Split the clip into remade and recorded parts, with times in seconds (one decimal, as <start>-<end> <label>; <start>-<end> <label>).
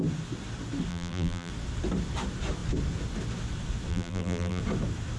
0.0-0.9 recorded; 0.9-1.5 remade; 1.5-3.9 recorded; 3.9-4.6 remade; 4.6-5.2 recorded